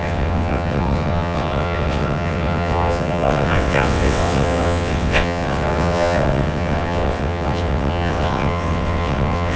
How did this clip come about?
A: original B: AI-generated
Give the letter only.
B